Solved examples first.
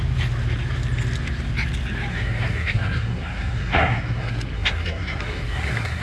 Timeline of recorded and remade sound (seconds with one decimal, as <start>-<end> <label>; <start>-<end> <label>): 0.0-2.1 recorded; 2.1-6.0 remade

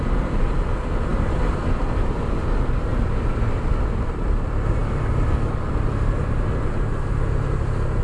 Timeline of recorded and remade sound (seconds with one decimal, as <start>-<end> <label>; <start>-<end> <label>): 0.0-2.9 remade; 2.9-4.1 recorded; 4.1-4.8 remade; 4.8-6.5 recorded; 6.5-8.0 remade

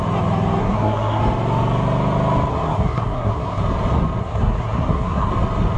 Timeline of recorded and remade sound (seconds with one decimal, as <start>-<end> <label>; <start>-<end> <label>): 0.0-0.6 recorded; 0.6-1.2 remade; 1.2-2.5 recorded; 2.5-3.6 remade; 3.6-4.2 recorded; 4.2-5.3 remade; 5.3-5.8 recorded

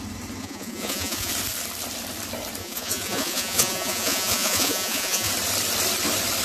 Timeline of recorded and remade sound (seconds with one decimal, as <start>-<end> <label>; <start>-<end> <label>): 0.0-0.4 recorded; 0.4-1.3 remade; 1.3-2.6 recorded; 2.6-5.3 remade; 5.3-6.4 recorded